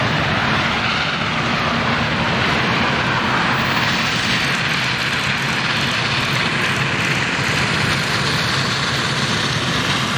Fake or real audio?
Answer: real